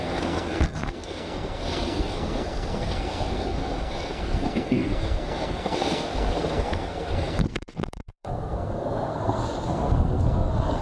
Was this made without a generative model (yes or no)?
no